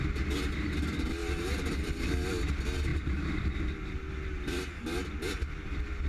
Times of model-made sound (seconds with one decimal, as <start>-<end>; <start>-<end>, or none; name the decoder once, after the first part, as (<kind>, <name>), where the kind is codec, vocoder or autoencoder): 1.2-2.1 (vocoder, BigVGAN v2); 2.9-3.7

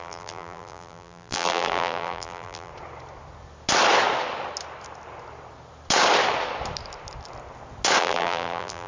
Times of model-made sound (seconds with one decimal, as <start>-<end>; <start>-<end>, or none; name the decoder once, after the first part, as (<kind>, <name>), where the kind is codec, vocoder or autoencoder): 0.0-2.7 (vocoder, BigVGAN v2); 8.0-8.9